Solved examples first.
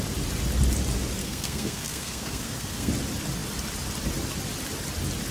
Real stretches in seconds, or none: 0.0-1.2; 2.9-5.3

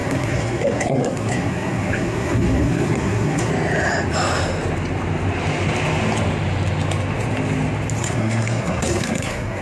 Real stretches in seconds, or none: 3.5-8.0

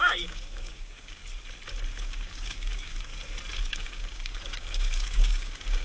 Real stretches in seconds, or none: 1.2-2.0; 3.1-3.6

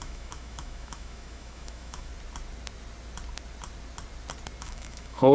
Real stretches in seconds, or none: 2.1-4.6